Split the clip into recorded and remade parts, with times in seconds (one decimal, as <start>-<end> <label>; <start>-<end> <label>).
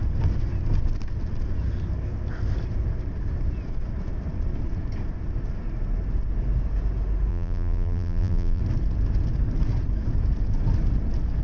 0.0-7.3 recorded; 7.3-8.6 remade; 8.6-11.4 recorded